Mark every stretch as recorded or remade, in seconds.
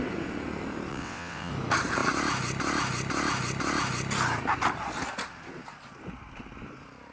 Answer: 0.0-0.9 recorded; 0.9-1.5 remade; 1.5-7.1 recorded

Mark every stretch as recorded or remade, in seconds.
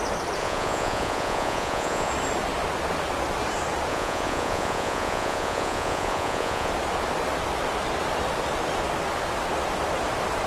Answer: 0.0-0.4 recorded; 0.4-2.1 remade; 2.1-3.9 recorded; 3.9-6.7 remade; 6.7-10.5 recorded